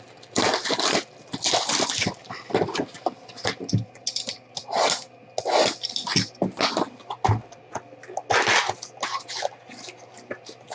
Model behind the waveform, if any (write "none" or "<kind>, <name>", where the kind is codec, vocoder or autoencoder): none